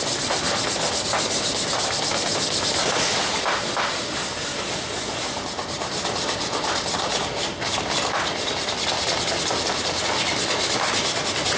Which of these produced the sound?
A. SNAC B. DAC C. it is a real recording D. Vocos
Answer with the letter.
C